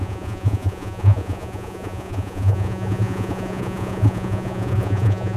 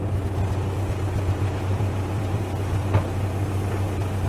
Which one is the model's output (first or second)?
first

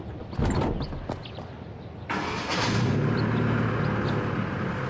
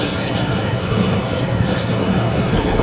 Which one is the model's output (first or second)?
second